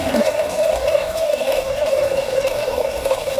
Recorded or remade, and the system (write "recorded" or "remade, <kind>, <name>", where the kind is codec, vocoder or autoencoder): remade, codec, DAC